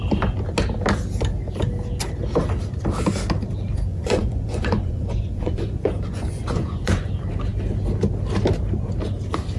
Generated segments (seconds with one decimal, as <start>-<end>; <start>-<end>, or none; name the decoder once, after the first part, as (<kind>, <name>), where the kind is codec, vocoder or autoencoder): 3.9-7.1 (vocoder, Vocos)